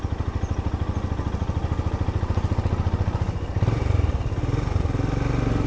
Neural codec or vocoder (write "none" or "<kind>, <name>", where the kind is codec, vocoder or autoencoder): none